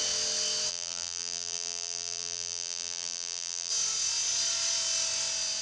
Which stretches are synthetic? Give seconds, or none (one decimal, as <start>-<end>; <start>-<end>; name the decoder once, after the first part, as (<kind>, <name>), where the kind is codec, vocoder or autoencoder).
0.7-3.7 (vocoder, BigVGAN v2)